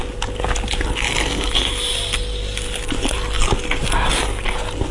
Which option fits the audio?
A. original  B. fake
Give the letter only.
A